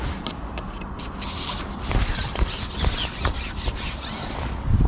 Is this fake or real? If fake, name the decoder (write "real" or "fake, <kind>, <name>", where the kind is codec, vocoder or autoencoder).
real